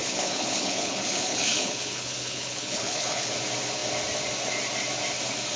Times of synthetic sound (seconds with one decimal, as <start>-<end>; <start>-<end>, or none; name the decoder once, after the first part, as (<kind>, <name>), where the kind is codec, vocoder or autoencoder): 0.0-3.4 (codec, HILCodec)